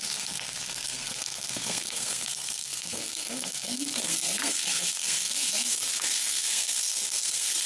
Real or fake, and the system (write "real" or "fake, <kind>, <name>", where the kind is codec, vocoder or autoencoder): fake, codec, SNAC